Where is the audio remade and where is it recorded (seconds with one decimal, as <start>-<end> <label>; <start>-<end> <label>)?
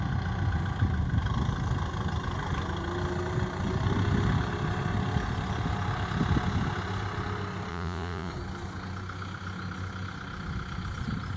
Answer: 0.0-7.7 recorded; 7.7-8.3 remade; 8.3-11.4 recorded